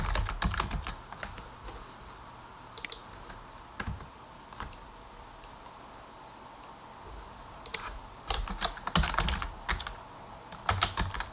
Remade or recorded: recorded